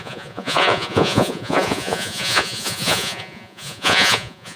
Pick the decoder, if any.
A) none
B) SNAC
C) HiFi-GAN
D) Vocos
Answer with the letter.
D